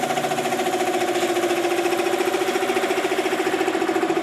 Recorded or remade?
recorded